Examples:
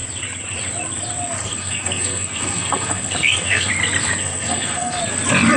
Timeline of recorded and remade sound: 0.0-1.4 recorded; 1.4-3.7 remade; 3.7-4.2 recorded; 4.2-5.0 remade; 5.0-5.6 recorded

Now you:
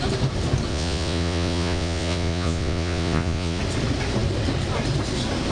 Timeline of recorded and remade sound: 0.0-0.7 recorded; 0.7-3.6 remade; 3.6-5.5 recorded

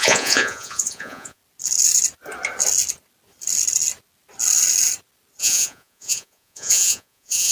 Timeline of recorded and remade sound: 0.0-1.4 remade; 1.4-5.4 recorded; 5.4-7.5 remade

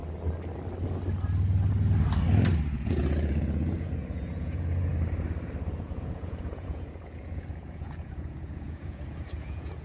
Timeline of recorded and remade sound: 0.0-2.7 recorded; 2.7-4.9 remade; 4.9-5.7 recorded; 5.7-9.8 remade

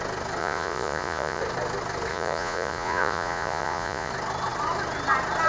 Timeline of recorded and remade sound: 0.0-0.4 recorded; 0.4-1.4 remade; 1.4-2.1 recorded; 2.1-4.1 remade; 4.1-5.5 recorded

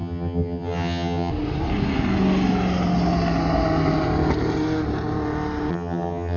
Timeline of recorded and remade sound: 0.0-1.3 remade; 1.3-5.7 recorded; 5.7-6.4 remade

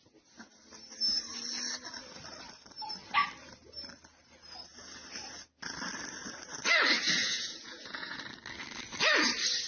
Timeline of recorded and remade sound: 0.0-7.2 recorded; 7.2-8.2 remade; 8.2-9.7 recorded

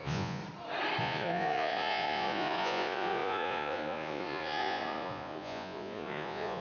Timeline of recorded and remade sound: 0.0-0.4 remade; 0.4-1.0 recorded; 1.0-6.6 remade